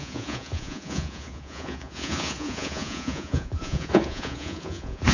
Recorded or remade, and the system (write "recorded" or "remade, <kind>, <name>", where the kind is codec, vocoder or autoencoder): remade, vocoder, Vocos